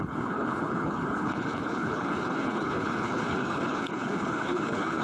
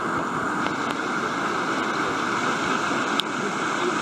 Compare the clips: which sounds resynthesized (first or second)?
first